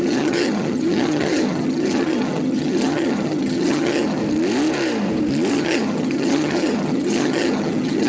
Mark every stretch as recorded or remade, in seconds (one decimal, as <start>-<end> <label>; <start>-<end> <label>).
0.0-4.2 remade; 4.2-5.5 recorded; 5.5-8.1 remade